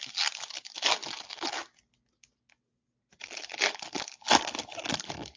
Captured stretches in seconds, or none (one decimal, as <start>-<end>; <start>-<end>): 0.0-5.4